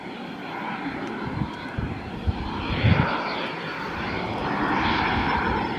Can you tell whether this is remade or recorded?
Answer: recorded